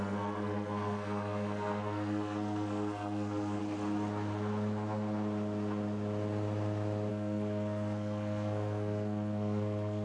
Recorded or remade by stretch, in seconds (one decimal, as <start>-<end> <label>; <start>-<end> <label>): 0.0-3.6 remade; 3.6-7.1 recorded; 7.1-10.0 remade